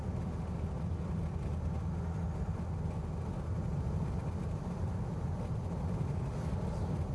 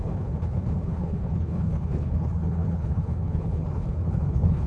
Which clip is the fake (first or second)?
second